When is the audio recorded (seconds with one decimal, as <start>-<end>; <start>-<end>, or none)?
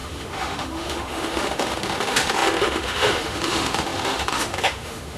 none